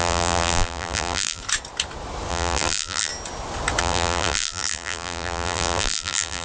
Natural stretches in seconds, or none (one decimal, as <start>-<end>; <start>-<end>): 1.4-2.3; 3.1-3.8